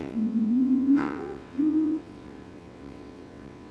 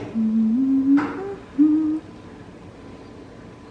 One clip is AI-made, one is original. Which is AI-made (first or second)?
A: first